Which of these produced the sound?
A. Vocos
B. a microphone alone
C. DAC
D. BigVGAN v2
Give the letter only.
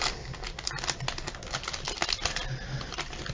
B